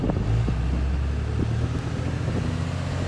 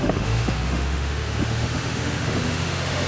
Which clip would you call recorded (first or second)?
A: first